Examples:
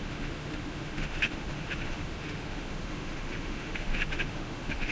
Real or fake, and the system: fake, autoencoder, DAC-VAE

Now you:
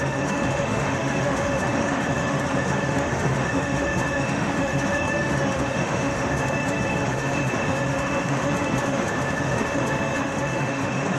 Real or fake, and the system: fake, autoencoder, DAC-VAE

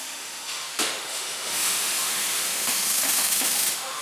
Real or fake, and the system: fake, autoencoder, DAC-VAE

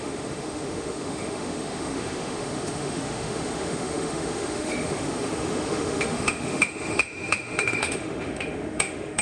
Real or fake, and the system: fake, autoencoder, DAC-VAE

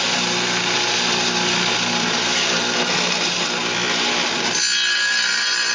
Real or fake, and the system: real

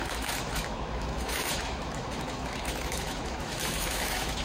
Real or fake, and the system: fake, autoencoder, DAC-VAE